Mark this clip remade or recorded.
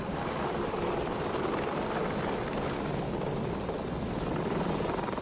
remade